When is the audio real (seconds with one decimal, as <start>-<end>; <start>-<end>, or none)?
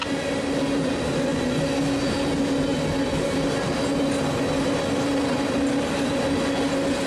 0.0-7.1